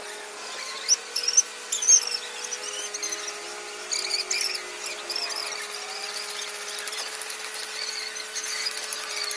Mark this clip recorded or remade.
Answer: recorded